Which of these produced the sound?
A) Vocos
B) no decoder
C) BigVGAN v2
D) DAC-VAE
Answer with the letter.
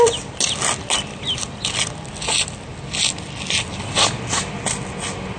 B